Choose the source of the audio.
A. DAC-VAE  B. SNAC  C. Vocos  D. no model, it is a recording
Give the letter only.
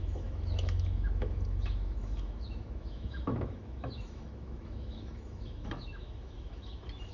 A